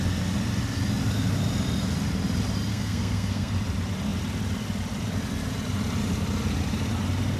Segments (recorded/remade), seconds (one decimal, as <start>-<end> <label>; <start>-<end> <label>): 0.0-2.7 recorded; 2.7-3.5 remade; 3.5-7.4 recorded